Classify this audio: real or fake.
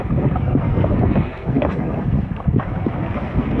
fake